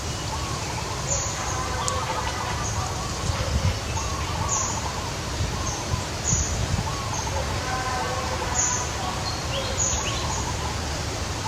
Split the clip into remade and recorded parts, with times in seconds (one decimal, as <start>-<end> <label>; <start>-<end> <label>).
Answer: 0.0-6.9 remade; 6.9-9.2 recorded; 9.2-11.5 remade